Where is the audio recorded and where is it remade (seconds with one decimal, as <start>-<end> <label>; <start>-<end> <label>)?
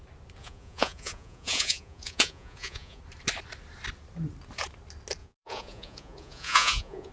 0.0-0.4 recorded; 0.4-3.0 remade; 3.0-5.2 recorded; 5.2-7.1 remade